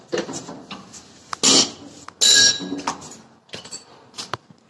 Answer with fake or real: real